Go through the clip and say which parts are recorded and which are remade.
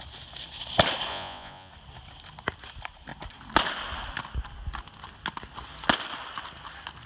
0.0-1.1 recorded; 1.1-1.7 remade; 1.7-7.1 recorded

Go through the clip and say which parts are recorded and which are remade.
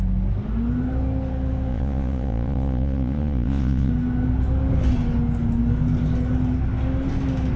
0.0-1.7 recorded; 1.7-3.9 remade; 3.9-7.6 recorded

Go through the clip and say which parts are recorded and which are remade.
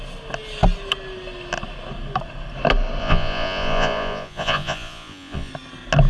0.0-3.0 recorded; 3.0-5.5 remade; 5.5-6.1 recorded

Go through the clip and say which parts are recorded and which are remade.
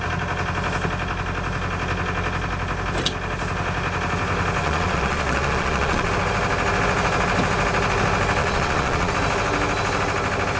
0.0-4.6 recorded; 4.6-6.1 remade; 6.1-8.4 recorded; 8.4-9.1 remade; 9.1-10.6 recorded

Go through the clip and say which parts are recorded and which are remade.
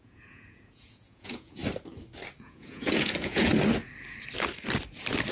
0.0-1.6 remade; 1.6-2.4 recorded; 2.4-3.5 remade; 3.5-5.3 recorded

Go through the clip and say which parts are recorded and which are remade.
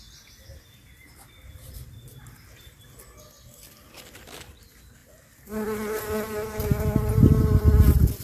0.0-8.2 recorded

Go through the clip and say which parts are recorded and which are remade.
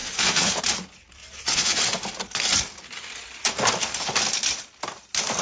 0.0-0.6 remade; 0.6-1.2 recorded; 1.2-1.8 remade; 1.8-5.4 recorded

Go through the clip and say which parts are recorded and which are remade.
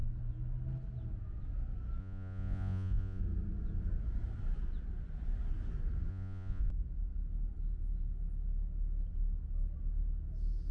0.0-2.0 recorded; 2.0-3.2 remade; 3.2-6.1 recorded; 6.1-6.7 remade; 6.7-10.7 recorded